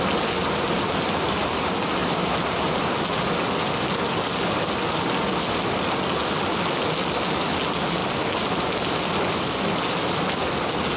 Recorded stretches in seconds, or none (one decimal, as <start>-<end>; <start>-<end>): 0.0-11.0